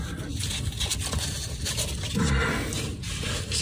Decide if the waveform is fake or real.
real